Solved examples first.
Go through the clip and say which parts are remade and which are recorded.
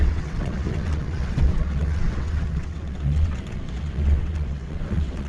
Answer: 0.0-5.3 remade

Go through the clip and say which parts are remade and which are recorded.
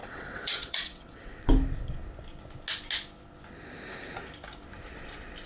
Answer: 0.0-1.5 remade; 1.5-5.5 recorded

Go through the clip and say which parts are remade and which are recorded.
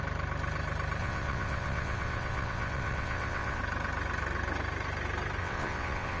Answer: 0.0-1.0 recorded; 1.0-3.6 remade; 3.6-5.4 recorded; 5.4-6.2 remade